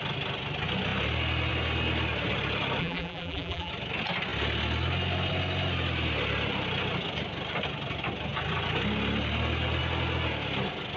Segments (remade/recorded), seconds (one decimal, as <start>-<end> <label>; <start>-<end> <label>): 0.0-2.8 recorded; 2.8-3.7 remade; 3.7-11.0 recorded